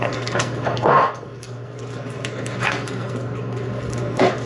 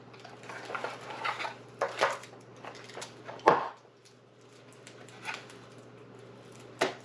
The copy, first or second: first